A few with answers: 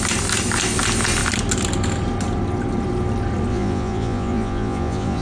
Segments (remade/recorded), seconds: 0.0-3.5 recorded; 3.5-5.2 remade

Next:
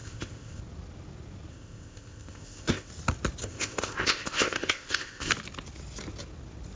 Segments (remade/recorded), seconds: 0.0-0.6 remade; 0.6-1.5 recorded; 1.5-2.9 remade; 2.9-3.4 recorded; 3.4-5.3 remade; 5.3-6.8 recorded

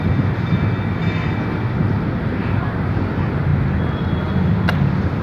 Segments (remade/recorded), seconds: 0.0-2.4 recorded; 2.4-3.0 remade; 3.0-5.2 recorded

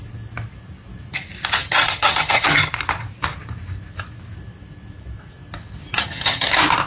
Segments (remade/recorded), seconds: 0.0-1.6 recorded; 1.6-2.7 remade; 2.7-6.0 recorded; 6.0-6.5 remade; 6.5-6.9 recorded

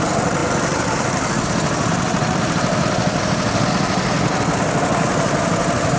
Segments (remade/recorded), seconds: 0.0-6.0 recorded

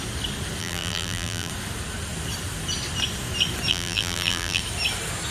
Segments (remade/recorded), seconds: 0.0-0.6 recorded; 0.6-1.5 remade; 1.5-3.7 recorded; 3.7-4.6 remade; 4.6-5.3 recorded

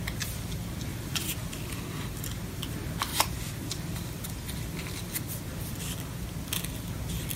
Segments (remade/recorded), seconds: 0.0-0.9 recorded; 0.9-1.5 remade; 1.5-3.1 recorded; 3.1-5.1 remade; 5.1-7.4 recorded

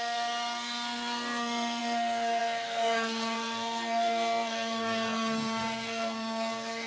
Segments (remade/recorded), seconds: 0.0-6.9 remade